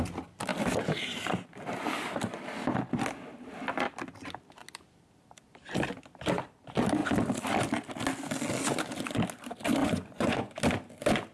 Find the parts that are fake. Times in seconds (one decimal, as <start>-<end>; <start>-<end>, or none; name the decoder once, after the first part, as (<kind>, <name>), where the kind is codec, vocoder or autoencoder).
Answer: 9.8-10.5 (vocoder, Vocos)